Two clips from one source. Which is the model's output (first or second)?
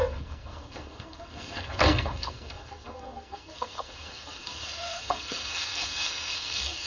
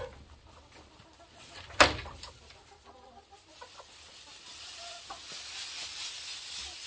first